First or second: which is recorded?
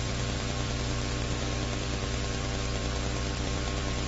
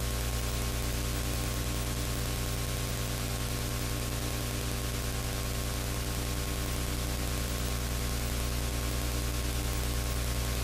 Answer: second